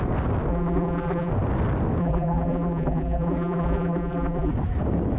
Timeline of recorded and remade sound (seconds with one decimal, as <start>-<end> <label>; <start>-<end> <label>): 0.0-0.5 recorded; 0.5-1.3 remade; 1.3-2.0 recorded; 2.0-4.5 remade; 4.5-5.2 recorded